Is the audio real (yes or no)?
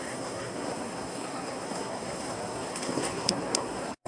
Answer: no